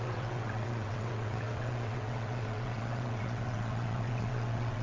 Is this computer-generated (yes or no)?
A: yes